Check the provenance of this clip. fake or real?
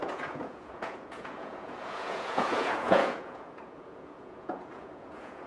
fake